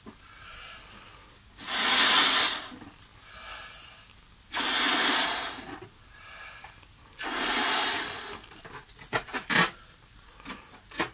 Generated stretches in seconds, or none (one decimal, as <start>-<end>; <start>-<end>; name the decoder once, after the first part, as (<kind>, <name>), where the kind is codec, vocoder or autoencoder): none